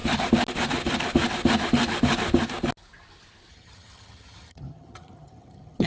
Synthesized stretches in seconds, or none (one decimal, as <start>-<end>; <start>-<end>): 3.5-5.9